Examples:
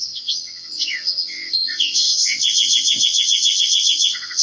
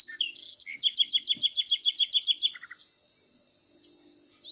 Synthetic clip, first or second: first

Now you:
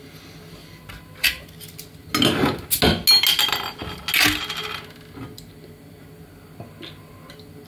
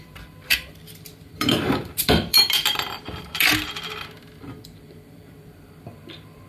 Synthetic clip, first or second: second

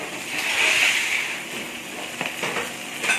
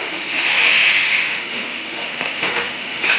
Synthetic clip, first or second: second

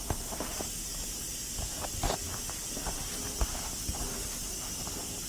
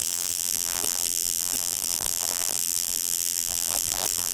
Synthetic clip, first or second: second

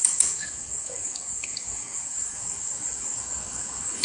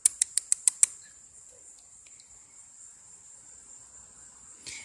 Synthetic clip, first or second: first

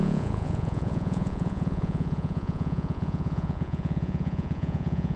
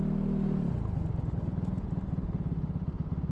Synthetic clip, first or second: first